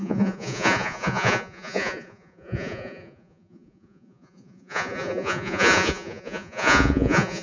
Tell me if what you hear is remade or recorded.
remade